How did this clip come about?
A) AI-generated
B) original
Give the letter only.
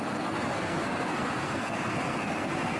A